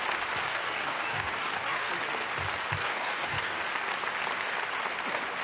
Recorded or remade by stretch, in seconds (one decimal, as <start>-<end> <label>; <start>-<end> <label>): 0.0-0.5 recorded; 0.5-1.9 remade; 1.9-2.8 recorded; 2.8-3.6 remade; 3.6-5.4 recorded

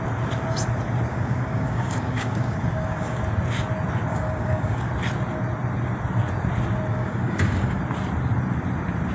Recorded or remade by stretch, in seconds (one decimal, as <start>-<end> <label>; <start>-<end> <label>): 0.0-1.1 recorded; 1.1-3.2 remade; 3.2-4.1 recorded; 4.1-4.9 remade; 4.9-6.9 recorded; 6.9-7.8 remade; 7.8-9.1 recorded

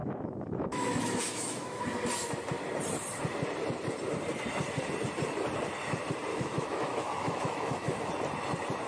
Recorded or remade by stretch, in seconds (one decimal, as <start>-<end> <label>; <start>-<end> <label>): 0.0-1.8 remade; 1.8-6.3 recorded; 6.3-8.1 remade; 8.1-8.9 recorded

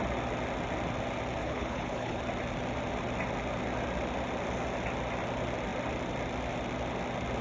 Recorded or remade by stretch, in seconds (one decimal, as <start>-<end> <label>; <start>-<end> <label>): 0.0-1.4 recorded; 1.4-2.2 remade; 2.2-7.4 recorded

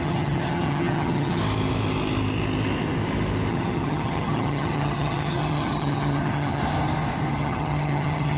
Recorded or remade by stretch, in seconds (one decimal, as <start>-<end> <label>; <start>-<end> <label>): 0.0-1.4 remade; 1.4-3.5 recorded; 3.5-6.6 remade; 6.6-7.3 recorded; 7.3-8.4 remade

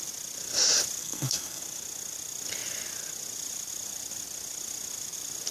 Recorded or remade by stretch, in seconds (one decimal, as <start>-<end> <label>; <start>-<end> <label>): 0.0-1.0 recorded; 1.0-1.6 remade; 1.6-5.5 recorded

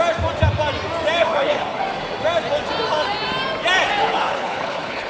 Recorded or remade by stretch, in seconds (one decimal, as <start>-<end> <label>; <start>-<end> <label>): 0.0-1.2 recorded; 1.2-1.8 remade; 1.8-4.0 recorded; 4.0-5.1 remade